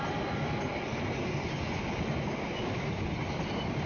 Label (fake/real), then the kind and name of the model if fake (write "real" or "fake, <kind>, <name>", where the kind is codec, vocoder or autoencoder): real